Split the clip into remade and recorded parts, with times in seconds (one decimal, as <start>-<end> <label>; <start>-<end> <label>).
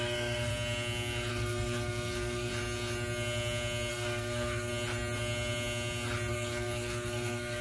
0.0-0.5 remade; 0.5-1.3 recorded; 1.3-2.5 remade; 2.5-3.9 recorded; 3.9-4.7 remade; 4.7-6.3 recorded; 6.3-7.6 remade